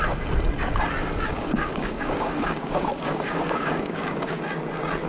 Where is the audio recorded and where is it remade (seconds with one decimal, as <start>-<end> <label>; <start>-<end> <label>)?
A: 0.0-1.3 recorded; 1.3-4.4 remade; 4.4-5.1 recorded